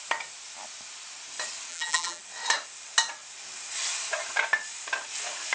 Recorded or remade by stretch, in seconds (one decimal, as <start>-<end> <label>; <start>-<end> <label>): 0.0-1.7 recorded; 1.7-2.2 remade; 2.2-5.5 recorded